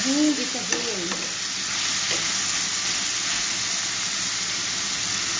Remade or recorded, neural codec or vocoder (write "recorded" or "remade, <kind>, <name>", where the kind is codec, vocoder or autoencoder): recorded